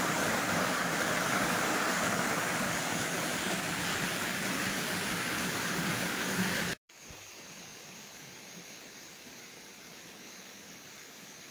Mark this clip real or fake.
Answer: fake